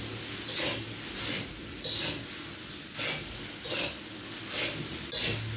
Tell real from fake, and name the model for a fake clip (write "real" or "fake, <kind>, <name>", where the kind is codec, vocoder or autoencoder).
real